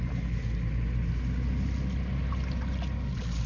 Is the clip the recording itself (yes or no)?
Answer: yes